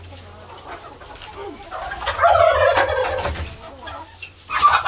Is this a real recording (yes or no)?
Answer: yes